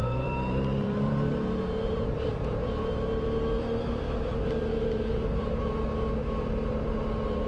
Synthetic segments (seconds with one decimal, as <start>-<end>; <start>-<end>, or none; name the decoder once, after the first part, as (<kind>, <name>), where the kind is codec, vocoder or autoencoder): 0.0-2.1 (vocoder, BigVGAN v2); 4.7-5.7